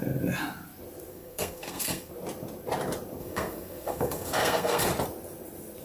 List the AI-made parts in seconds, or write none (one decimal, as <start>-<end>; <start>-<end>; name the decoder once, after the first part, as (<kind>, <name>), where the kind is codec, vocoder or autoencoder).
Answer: 1.1-2.1 (codec, SNAC); 3.2-4.8